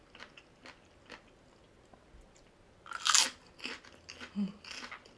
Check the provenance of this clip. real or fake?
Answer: real